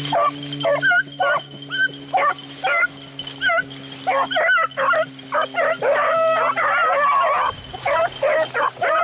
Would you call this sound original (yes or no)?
yes